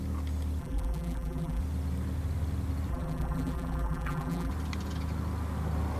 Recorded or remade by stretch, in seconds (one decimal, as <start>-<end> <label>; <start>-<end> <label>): 0.0-0.6 recorded; 0.6-1.6 remade; 1.6-2.9 recorded; 2.9-4.5 remade; 4.5-6.0 recorded